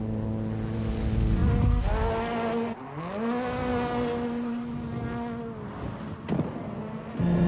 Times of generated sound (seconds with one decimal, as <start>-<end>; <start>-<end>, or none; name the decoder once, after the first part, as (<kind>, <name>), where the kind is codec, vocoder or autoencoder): none